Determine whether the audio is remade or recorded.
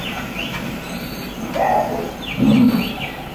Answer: recorded